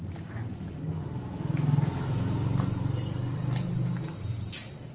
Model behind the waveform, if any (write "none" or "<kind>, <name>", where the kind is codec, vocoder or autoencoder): none